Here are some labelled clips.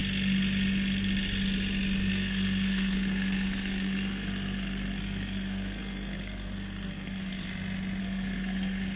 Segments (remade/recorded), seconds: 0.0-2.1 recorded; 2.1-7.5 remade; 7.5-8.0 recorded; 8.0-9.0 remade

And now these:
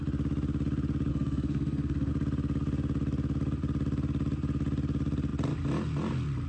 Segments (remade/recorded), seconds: 0.0-1.1 recorded; 1.1-2.1 remade; 2.1-6.5 recorded